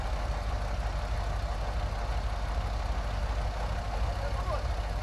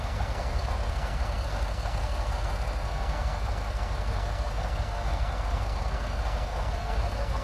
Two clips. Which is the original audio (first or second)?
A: first